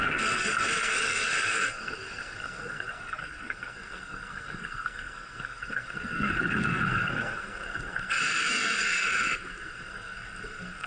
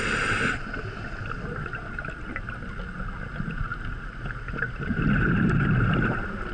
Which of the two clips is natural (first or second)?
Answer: second